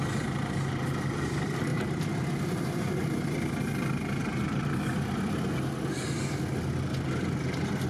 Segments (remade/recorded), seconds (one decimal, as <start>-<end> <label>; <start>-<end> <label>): 0.0-1.7 recorded; 1.7-3.0 remade; 3.0-7.9 recorded